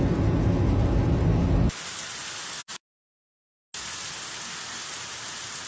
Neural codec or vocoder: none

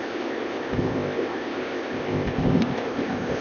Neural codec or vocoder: codec, ZipCodec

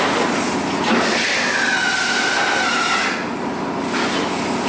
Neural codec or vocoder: none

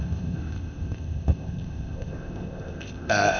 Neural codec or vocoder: codec, ZipCodec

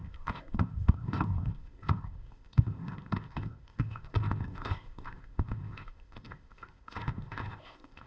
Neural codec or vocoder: codec, ZipCodec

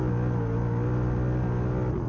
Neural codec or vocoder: none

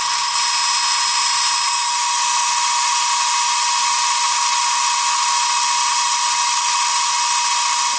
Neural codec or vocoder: none